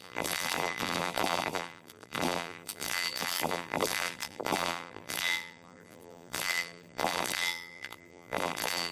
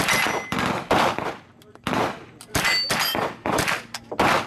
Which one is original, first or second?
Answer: second